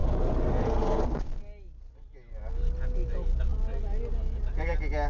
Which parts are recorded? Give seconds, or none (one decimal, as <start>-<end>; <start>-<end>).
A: 0.0-5.1